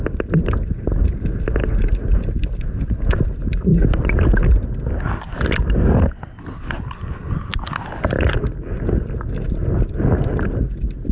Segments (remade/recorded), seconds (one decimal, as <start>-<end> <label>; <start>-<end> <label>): 0.0-11.1 recorded

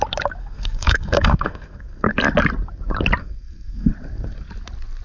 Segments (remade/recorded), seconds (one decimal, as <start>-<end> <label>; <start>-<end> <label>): 0.0-0.4 recorded; 0.4-2.1 remade; 2.1-3.2 recorded; 3.2-3.9 remade; 3.9-5.0 recorded

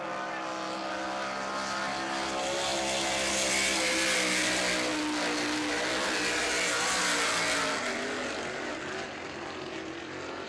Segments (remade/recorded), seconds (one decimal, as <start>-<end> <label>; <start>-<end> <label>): 0.0-10.5 recorded

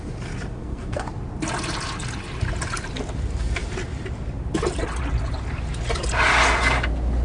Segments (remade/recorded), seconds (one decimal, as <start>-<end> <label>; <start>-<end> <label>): 0.0-0.6 recorded; 0.6-1.1 remade; 1.1-7.2 recorded

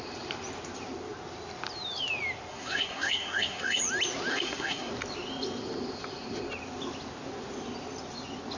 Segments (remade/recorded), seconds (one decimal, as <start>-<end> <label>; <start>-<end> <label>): 0.0-2.5 recorded; 2.5-3.8 remade; 3.8-4.3 recorded; 4.3-4.9 remade; 4.9-8.6 recorded

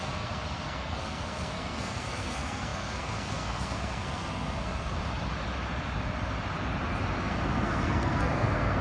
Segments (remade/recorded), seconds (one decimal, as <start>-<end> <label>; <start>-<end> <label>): 0.0-5.0 remade; 5.0-7.2 recorded; 7.2-8.8 remade

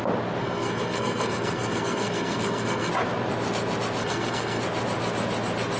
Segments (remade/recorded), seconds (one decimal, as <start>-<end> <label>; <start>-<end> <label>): 0.0-0.4 recorded; 0.4-2.9 remade; 2.9-4.0 recorded; 4.0-4.6 remade; 4.6-5.8 recorded

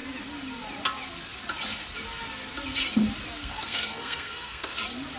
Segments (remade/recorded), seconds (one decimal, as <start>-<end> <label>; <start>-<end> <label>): 0.0-3.4 recorded; 3.4-4.8 remade; 4.8-5.2 recorded